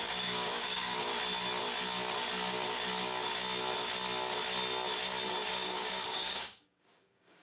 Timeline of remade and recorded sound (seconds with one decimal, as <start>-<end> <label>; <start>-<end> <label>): 0.0-1.1 remade; 1.1-5.5 recorded; 5.5-7.4 remade